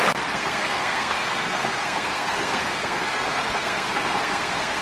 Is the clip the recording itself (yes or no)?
no